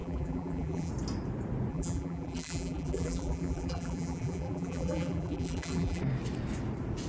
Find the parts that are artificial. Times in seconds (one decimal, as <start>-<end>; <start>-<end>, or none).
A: 0.0-0.9; 1.7-6.0